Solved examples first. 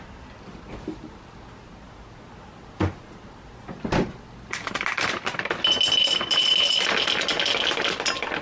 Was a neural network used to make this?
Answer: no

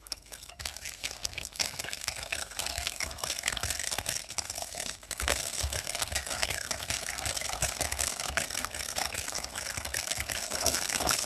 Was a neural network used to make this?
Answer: yes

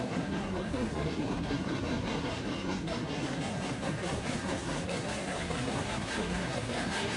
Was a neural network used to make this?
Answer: yes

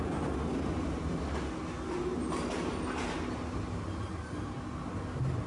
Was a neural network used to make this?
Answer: no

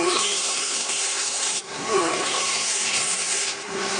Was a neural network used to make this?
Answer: yes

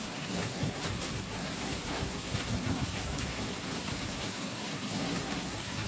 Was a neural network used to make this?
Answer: yes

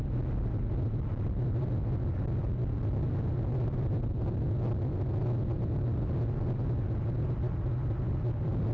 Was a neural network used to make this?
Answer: no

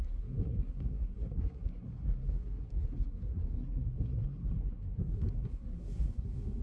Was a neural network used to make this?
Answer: yes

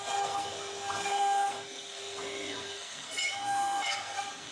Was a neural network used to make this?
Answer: yes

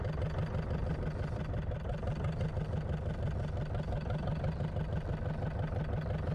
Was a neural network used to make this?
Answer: no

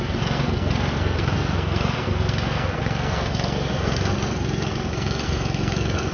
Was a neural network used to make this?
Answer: yes